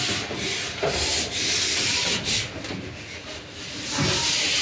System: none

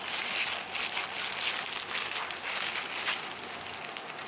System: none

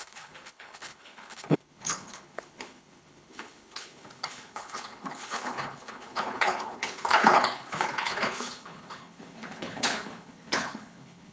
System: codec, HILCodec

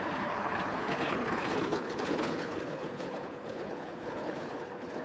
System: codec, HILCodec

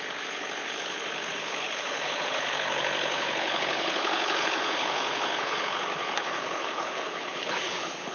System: codec, HILCodec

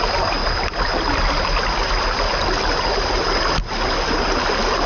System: none